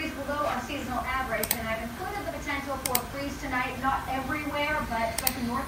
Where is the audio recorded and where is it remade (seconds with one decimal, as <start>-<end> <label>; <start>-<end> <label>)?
0.0-0.8 recorded; 0.8-2.3 remade; 2.3-4.0 recorded; 4.0-4.9 remade; 4.9-5.7 recorded